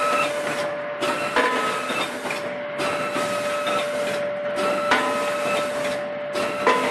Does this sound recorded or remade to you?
recorded